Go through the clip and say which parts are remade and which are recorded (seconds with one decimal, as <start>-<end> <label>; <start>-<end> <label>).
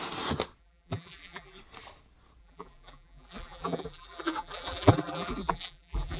0.0-0.6 recorded; 0.6-1.6 remade; 1.6-2.4 recorded; 2.4-6.2 remade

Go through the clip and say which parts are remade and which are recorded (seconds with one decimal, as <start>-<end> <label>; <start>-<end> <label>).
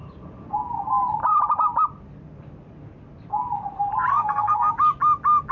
0.0-4.1 recorded; 4.1-4.7 remade; 4.7-5.5 recorded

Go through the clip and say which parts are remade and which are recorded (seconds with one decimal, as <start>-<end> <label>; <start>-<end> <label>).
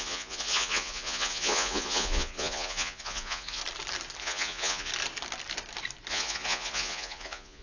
0.0-3.6 remade; 3.6-4.2 recorded; 4.2-4.9 remade; 4.9-6.1 recorded; 6.1-7.6 remade